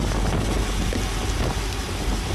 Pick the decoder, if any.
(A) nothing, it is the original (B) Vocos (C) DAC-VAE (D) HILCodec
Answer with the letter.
A